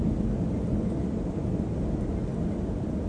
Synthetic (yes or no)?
no